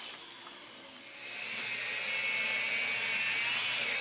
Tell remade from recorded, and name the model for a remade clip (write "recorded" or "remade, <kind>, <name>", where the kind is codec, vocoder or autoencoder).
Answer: recorded